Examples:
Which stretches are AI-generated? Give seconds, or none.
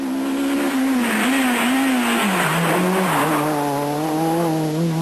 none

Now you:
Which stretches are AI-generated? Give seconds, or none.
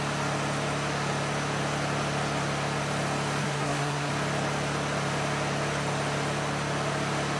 3.4-4.1 (codec, SNAC)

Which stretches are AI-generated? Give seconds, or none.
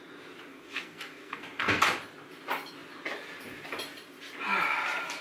0.5-1.8 (codec, SNAC)